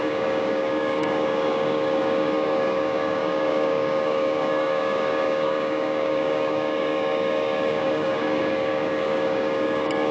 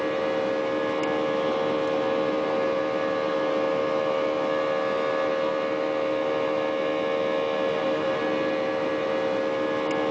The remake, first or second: first